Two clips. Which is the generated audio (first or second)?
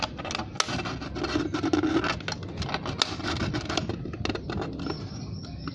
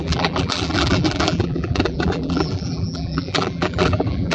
second